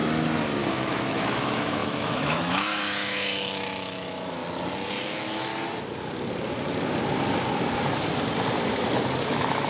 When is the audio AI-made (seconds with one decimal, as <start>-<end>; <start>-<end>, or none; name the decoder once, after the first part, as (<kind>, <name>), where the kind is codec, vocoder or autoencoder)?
0.7-4.4 (autoencoder, DAC-VAE); 5.0-5.5; 9.2-9.7